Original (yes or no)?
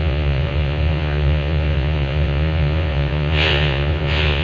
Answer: no